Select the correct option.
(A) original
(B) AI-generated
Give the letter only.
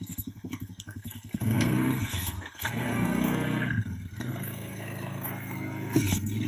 B